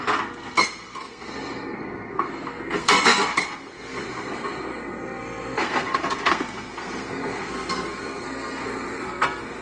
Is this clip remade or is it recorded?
remade